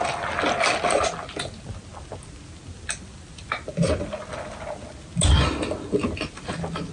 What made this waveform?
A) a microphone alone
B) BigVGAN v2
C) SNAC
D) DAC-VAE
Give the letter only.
A